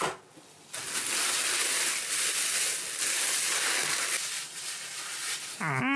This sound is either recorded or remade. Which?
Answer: recorded